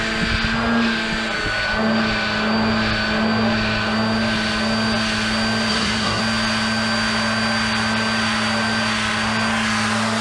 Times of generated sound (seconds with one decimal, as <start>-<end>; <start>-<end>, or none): 5.7-6.2